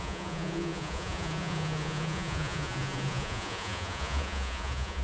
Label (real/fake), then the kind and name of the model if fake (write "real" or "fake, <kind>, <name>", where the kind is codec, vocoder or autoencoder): fake, vocoder, Vocos